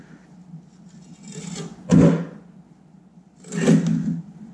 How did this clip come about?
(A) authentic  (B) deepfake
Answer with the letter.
A